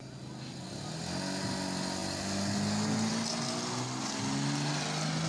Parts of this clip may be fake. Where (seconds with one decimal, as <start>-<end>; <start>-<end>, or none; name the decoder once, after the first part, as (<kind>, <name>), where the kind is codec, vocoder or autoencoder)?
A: none